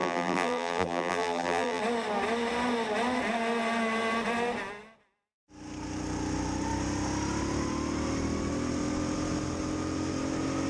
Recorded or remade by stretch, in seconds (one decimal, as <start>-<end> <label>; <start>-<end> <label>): 0.0-1.8 remade; 1.8-10.7 recorded